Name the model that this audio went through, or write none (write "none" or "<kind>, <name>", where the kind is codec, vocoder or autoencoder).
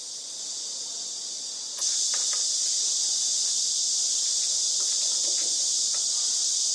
none